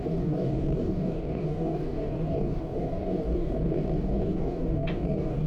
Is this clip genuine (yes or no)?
no